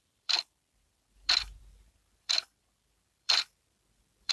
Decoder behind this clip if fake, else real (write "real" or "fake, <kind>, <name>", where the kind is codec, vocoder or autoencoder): fake, vocoder, BigVGAN v2